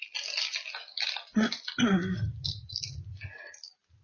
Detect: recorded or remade recorded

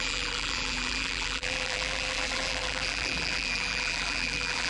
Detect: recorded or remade remade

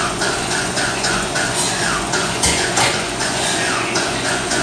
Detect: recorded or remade remade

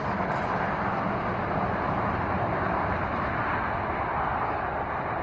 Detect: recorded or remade recorded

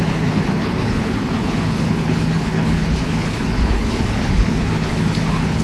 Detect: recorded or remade remade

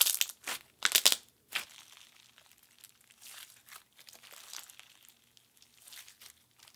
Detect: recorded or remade recorded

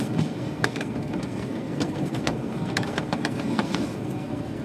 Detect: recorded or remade remade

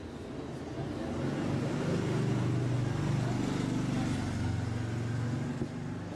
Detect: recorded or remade recorded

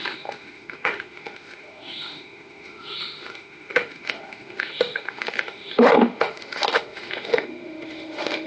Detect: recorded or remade remade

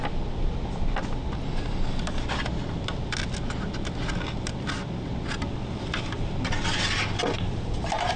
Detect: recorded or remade recorded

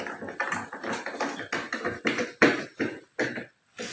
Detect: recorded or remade recorded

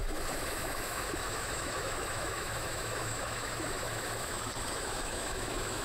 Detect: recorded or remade remade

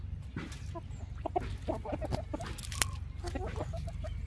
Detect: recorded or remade recorded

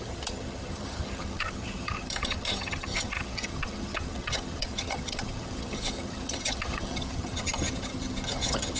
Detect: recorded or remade remade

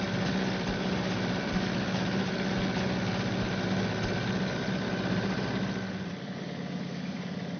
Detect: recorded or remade recorded